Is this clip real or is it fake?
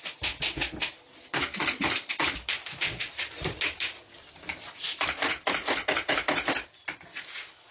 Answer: real